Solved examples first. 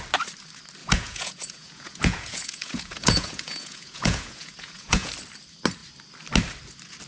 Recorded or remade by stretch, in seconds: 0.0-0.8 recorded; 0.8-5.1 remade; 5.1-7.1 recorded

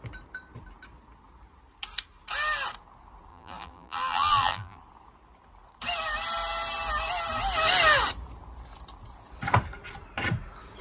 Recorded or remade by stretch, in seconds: 0.0-3.3 recorded; 3.3-4.8 remade; 4.8-10.8 recorded

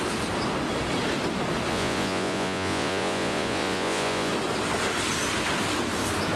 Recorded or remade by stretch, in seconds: 0.0-1.7 recorded; 1.7-4.3 remade; 4.3-6.4 recorded